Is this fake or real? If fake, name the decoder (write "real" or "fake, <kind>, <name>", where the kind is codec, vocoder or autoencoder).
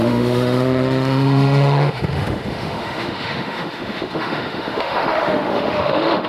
fake, autoencoder, DAC-VAE